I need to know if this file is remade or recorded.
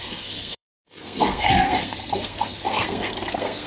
remade